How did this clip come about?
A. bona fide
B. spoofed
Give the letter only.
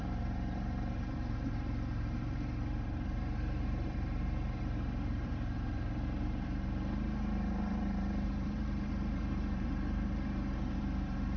B